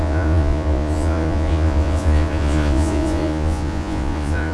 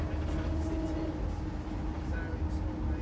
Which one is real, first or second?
second